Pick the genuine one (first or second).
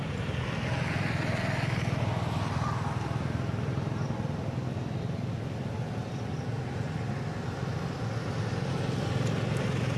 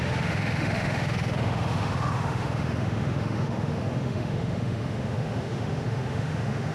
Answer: first